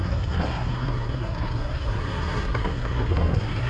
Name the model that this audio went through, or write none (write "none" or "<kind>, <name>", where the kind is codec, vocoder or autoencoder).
codec, SNAC